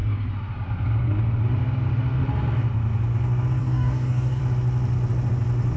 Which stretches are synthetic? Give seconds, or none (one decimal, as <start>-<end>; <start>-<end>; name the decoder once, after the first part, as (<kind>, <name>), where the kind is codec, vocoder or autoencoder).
3.6-4.4 (codec, DAC)